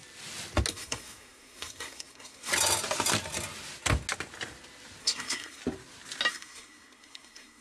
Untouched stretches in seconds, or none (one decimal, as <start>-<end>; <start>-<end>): 0.0-0.7; 2.5-5.0; 5.6-6.3